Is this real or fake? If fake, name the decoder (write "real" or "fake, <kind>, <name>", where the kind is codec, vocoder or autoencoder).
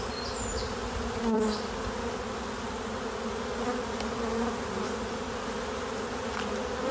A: real